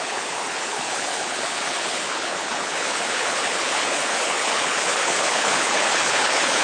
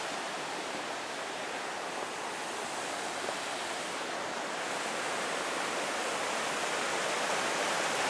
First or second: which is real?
second